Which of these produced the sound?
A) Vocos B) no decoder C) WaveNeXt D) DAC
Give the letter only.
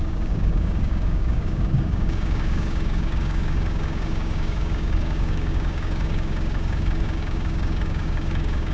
D